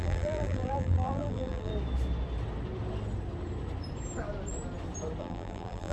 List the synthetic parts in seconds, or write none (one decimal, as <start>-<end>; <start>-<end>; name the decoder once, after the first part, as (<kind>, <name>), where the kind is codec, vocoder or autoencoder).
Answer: 0.0-1.7 (vocoder, BigVGAN v2); 5.2-5.9